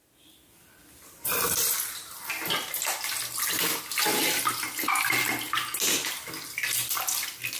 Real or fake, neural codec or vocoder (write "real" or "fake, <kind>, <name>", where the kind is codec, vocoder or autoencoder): real